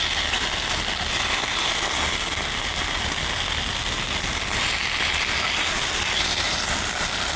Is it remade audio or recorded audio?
recorded